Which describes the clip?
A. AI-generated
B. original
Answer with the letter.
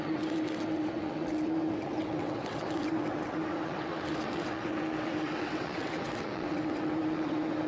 A